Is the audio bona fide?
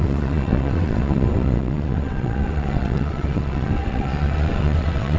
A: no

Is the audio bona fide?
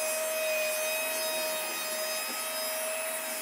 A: yes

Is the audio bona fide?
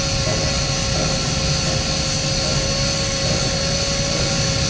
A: yes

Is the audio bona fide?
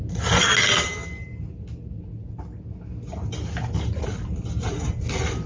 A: yes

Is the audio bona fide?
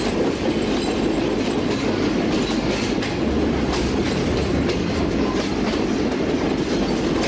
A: yes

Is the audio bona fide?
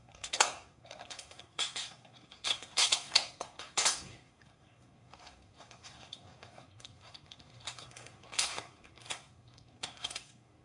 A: no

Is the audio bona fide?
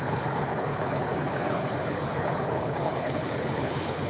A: no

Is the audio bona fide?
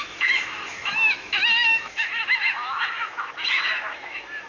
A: no